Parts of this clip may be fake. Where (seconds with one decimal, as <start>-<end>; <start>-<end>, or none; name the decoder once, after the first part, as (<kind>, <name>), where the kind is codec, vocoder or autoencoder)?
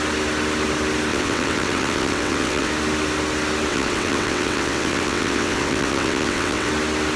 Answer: 1.1-2.7 (vocoder, WaveNeXt); 3.7-6.7